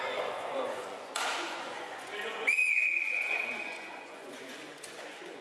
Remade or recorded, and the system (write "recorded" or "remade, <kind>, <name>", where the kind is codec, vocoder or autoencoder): remade, vocoder, Vocos